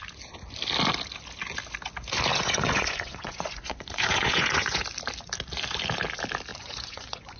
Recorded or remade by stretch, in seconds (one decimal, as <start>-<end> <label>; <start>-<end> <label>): 0.0-2.3 recorded; 2.3-4.8 remade; 4.8-6.5 recorded; 6.5-7.4 remade